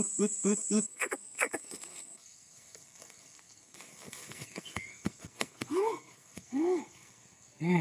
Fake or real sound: fake